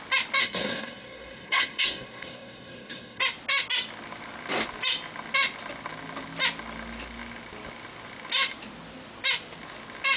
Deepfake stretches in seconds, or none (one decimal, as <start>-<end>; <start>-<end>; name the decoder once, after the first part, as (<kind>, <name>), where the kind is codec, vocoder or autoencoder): 0.4-3.2 (codec, SNAC)